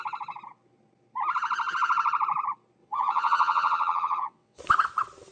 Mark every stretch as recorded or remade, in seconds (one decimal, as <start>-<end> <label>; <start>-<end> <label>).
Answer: 0.0-2.8 recorded; 2.8-4.6 remade; 4.6-5.3 recorded